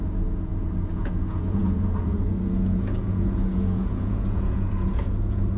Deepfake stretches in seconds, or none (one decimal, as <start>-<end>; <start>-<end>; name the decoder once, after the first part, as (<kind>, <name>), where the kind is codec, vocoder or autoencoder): 0.0-5.6 (vocoder, Vocos)